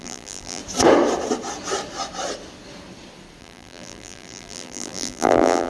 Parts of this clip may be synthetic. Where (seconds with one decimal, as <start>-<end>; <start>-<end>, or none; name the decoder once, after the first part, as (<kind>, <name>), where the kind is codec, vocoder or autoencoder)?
0.0-0.6 (vocoder, BigVGAN v2); 3.4-5.7